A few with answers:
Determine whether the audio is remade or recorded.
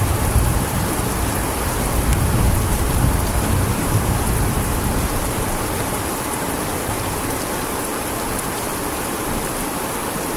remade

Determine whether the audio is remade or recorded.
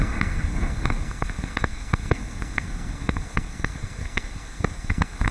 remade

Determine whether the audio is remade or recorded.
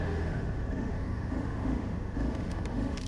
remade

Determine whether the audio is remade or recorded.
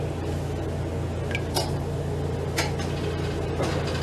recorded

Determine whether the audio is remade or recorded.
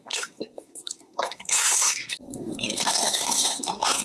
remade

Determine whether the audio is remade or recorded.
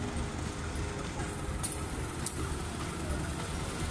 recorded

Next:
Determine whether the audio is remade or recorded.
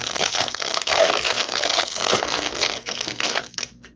remade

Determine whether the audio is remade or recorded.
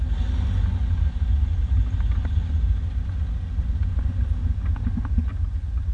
recorded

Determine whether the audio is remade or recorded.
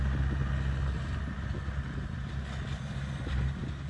recorded